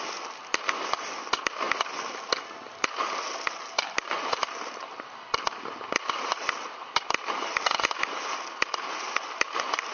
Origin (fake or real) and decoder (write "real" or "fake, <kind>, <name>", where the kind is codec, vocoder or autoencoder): real